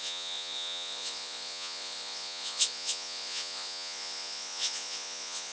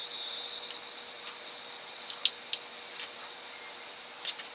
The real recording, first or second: second